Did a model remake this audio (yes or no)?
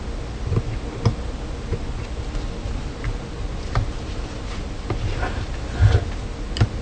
no